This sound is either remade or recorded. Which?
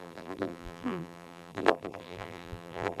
remade